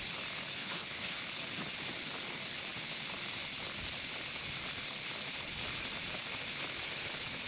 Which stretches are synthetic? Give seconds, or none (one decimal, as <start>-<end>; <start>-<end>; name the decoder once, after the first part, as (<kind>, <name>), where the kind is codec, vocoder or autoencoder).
0.6-1.2 (codec, HILCodec)